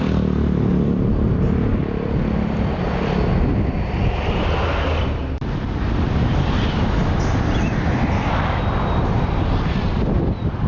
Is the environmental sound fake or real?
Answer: real